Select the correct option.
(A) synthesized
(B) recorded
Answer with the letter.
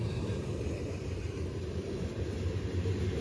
B